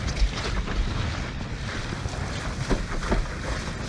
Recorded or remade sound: recorded